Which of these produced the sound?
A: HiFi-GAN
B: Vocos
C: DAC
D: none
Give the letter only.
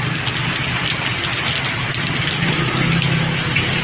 D